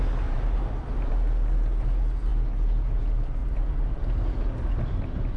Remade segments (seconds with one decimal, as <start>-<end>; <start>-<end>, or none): none